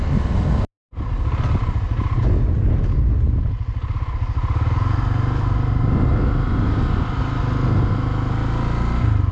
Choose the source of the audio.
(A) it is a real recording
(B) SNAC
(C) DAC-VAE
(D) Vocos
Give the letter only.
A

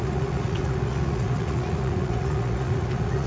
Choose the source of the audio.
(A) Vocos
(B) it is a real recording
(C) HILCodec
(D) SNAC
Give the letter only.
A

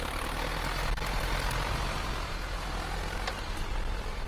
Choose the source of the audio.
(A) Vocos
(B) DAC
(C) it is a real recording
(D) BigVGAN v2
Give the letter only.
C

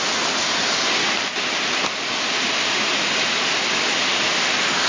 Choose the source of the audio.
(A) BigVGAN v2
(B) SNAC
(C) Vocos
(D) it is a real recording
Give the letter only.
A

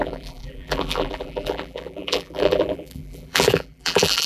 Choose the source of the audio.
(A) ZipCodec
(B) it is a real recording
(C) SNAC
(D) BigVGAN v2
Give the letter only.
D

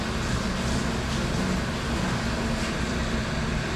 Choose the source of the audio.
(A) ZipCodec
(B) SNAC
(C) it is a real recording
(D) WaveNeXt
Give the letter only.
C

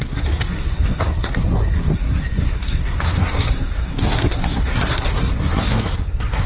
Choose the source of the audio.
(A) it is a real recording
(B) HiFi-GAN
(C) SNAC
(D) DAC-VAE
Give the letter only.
C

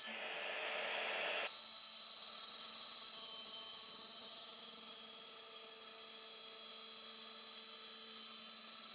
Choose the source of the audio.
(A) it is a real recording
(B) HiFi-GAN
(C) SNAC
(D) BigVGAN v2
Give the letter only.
A